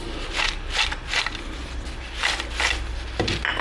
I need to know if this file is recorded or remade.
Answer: recorded